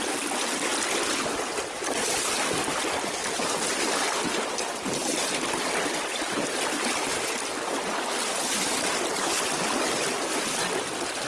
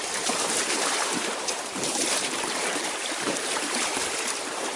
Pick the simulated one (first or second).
second